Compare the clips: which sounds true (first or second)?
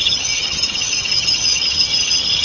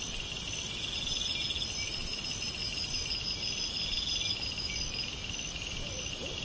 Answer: second